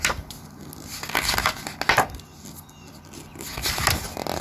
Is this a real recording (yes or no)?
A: yes